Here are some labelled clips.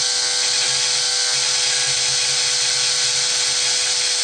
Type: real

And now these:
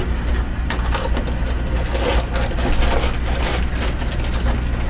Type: real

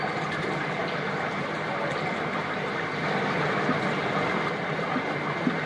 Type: fake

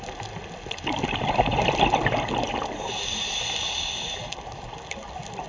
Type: real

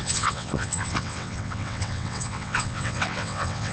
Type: fake